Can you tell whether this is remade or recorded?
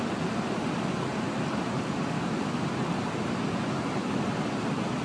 recorded